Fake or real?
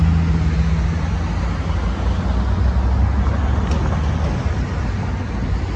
real